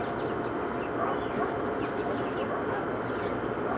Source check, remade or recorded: recorded